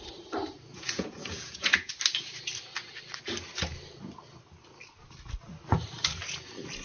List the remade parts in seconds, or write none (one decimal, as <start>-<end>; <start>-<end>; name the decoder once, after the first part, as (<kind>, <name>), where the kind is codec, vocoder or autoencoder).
0.7-1.9 (vocoder, Vocos)

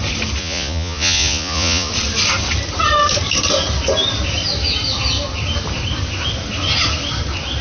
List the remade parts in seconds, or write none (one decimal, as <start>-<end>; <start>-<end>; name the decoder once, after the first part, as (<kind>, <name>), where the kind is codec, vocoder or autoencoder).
0.4-1.9 (vocoder, Vocos)